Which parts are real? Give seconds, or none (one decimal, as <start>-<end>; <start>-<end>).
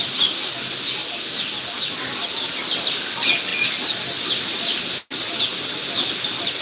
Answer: 0.0-6.6